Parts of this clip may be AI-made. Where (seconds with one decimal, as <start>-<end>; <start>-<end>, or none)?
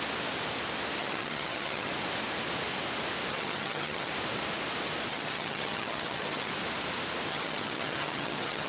1.0-1.9; 3.3-4.1; 5.1-6.5; 7.3-8.7